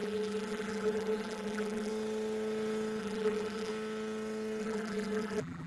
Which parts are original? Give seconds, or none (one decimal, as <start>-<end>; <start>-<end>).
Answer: 1.9-3.0; 3.7-4.6

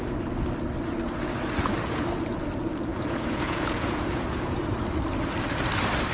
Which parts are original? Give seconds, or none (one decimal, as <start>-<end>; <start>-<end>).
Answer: 0.0-2.9; 4.7-6.1

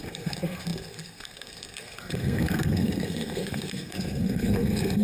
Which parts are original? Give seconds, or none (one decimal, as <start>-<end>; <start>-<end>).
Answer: none

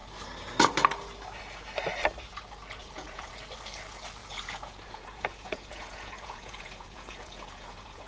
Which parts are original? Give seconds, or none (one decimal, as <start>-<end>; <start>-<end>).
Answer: 0.0-2.8; 3.3-4.2

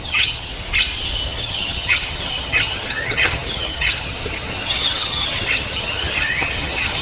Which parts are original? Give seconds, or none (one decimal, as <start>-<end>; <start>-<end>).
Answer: 0.5-1.4

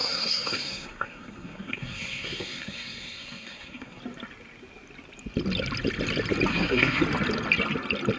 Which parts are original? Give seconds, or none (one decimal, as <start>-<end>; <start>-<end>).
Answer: 4.0-6.5; 7.0-8.2

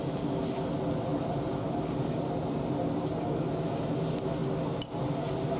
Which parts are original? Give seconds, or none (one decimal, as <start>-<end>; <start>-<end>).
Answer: 0.0-5.6

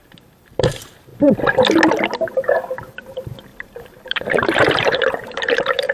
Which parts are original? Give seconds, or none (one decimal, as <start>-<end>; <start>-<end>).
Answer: 1.1-2.3